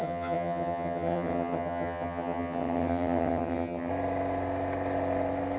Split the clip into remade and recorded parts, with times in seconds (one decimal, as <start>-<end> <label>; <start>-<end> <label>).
0.0-3.9 remade; 3.9-5.6 recorded